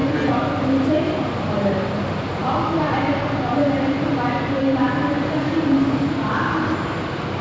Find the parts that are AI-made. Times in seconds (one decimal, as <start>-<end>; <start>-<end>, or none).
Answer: none